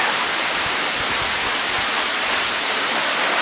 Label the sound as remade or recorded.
recorded